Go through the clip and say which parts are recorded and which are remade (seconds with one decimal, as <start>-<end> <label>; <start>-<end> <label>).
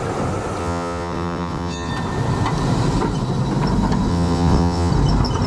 0.0-0.6 recorded; 0.6-1.9 remade; 1.9-4.1 recorded; 4.1-4.9 remade; 4.9-5.5 recorded